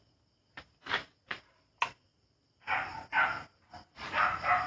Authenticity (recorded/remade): recorded